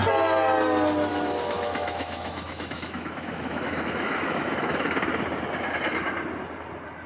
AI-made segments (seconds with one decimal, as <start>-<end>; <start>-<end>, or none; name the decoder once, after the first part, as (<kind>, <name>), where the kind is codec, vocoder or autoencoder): 1.1-4.8 (autoencoder, DAC-VAE)